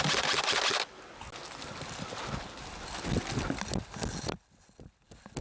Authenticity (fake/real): real